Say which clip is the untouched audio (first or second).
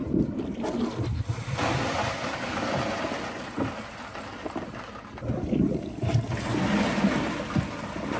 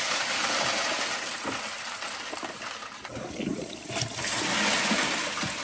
first